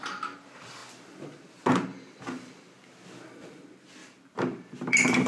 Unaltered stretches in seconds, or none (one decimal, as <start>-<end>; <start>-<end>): 0.0-4.0